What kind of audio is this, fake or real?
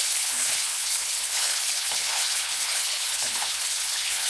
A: fake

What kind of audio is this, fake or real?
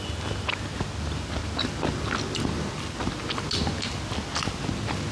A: real